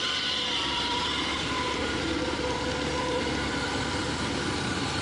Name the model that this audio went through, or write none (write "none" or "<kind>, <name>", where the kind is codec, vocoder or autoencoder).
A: vocoder, BigVGAN v2